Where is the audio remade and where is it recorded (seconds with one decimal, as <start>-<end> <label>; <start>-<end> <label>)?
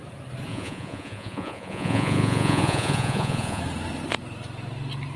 0.0-0.5 recorded; 0.5-3.6 remade; 3.6-5.2 recorded